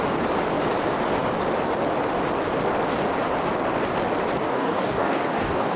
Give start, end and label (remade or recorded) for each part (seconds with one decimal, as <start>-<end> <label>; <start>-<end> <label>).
0.0-4.4 recorded; 4.4-5.8 remade